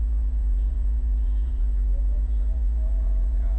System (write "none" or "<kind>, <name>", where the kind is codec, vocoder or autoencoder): vocoder, Vocos